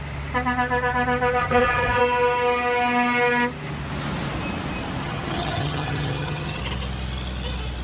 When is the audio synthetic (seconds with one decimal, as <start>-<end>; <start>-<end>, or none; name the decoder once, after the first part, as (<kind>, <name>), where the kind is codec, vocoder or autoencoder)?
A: 1.4-2.0 (vocoder, HiFi-GAN); 5.0-6.6